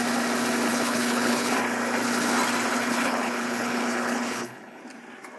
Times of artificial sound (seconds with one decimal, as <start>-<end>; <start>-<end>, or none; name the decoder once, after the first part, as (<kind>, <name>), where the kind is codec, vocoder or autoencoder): 0.7-1.5 (codec, HILCodec); 2.7-4.8